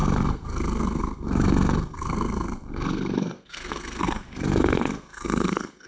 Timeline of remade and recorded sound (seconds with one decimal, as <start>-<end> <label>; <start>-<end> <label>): 0.0-5.9 remade